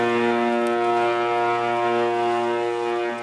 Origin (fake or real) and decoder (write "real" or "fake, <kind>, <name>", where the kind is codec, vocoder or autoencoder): real